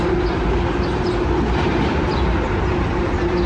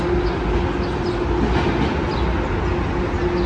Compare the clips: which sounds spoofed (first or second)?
first